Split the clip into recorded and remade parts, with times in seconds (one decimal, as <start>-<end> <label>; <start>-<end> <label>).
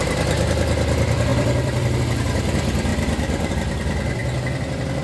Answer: 0.0-1.3 recorded; 1.3-2.0 remade; 2.0-2.9 recorded; 2.9-3.5 remade; 3.5-5.0 recorded